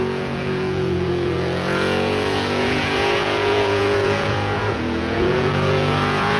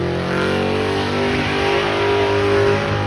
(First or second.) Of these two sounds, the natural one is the second